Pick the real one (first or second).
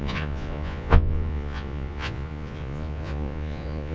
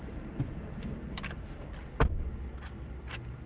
second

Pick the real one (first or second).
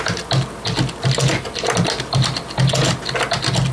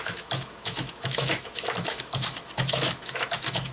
first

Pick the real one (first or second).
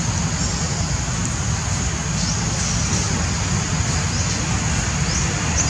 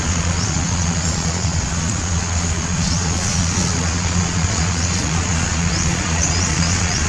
first